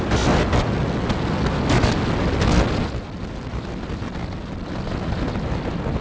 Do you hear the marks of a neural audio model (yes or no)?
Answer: no